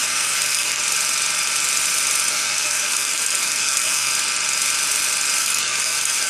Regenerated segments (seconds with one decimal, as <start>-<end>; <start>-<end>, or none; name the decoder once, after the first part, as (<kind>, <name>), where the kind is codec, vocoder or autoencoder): 0.0-0.8 (codec, SNAC); 2.3-4.1; 5.4-6.3